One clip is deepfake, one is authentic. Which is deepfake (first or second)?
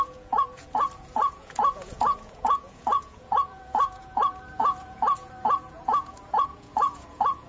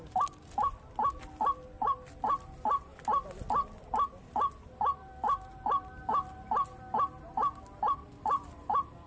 first